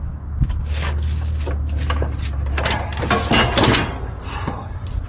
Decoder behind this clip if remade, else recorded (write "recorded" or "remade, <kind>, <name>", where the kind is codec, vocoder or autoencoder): recorded